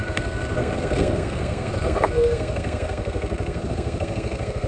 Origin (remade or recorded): remade